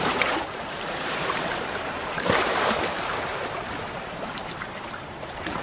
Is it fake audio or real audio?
fake